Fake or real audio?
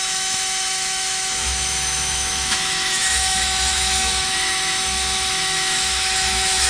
fake